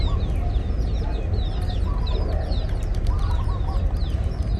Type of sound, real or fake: real